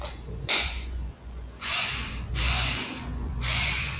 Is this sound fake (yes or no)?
yes